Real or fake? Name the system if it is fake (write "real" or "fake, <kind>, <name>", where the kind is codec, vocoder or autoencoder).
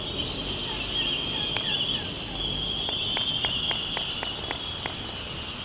real